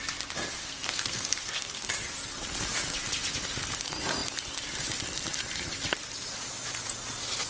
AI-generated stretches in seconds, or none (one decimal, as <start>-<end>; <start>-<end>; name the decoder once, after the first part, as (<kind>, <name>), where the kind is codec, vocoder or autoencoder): 0.6-1.9 (codec, SNAC)